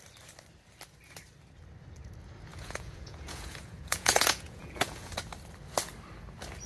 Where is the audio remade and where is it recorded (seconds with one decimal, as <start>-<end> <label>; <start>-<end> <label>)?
0.0-2.5 recorded; 2.5-5.1 remade; 5.1-6.7 recorded